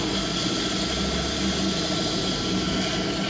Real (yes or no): yes